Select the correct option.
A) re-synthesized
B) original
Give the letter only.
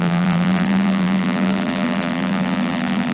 A